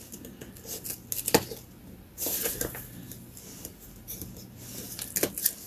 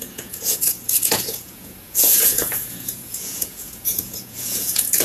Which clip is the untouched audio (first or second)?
first